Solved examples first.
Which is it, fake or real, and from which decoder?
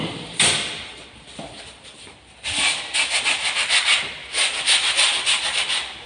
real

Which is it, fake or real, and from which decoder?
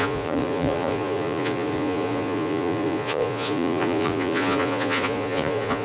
fake, vocoder, Vocos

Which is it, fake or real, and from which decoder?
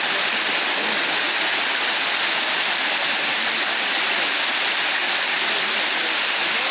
real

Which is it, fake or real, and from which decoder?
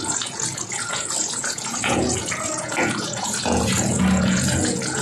fake, vocoder, Vocos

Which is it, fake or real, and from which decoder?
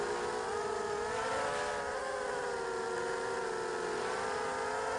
real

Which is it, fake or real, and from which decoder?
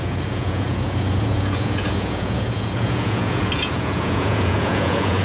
fake, vocoder, Vocos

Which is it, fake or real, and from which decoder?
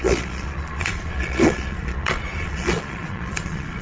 fake, vocoder, Vocos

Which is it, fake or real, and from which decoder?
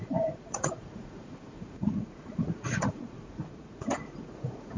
fake, vocoder, Vocos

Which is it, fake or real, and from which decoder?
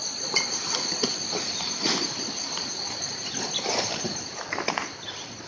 real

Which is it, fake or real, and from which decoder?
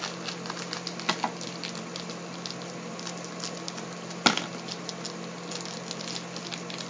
real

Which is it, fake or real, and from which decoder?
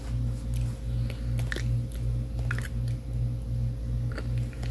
real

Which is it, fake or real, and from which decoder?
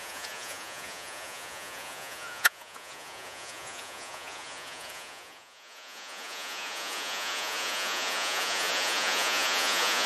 fake, vocoder, Vocos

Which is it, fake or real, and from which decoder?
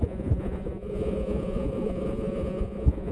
fake, vocoder, Vocos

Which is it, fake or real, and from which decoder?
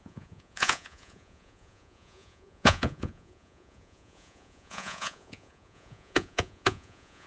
fake, vocoder, Vocos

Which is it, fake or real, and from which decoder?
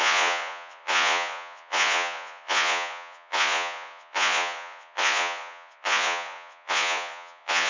fake, vocoder, Vocos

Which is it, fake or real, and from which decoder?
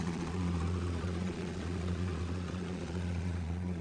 fake, vocoder, Vocos